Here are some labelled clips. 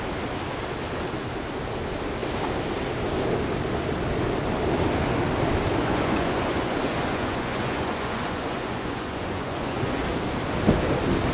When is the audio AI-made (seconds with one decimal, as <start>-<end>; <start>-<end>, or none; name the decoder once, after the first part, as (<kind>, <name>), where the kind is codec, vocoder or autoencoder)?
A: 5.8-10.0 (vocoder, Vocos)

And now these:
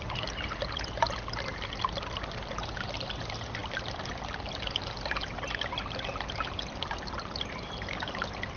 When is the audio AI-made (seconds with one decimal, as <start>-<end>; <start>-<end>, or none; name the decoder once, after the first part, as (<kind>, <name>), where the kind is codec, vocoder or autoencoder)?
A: none

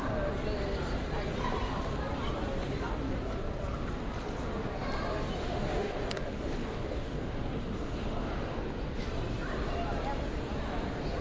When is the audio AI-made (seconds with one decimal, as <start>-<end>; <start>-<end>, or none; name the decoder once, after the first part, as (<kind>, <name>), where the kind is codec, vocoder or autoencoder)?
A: 5.4-8.6 (autoencoder, DAC-VAE)